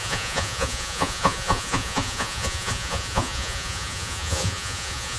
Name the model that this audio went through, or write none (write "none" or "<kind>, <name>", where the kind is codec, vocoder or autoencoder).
vocoder, Vocos